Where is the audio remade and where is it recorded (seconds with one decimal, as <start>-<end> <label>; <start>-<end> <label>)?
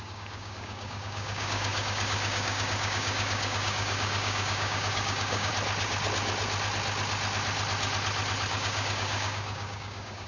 0.0-5.5 remade; 5.5-8.5 recorded; 8.5-10.3 remade